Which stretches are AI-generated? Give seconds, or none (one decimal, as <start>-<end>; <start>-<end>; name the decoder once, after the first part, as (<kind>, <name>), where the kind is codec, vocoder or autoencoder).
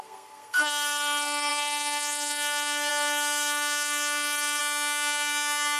0.0-4.6 (codec, SNAC)